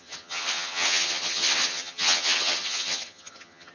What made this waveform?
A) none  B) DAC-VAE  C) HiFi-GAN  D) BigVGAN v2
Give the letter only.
C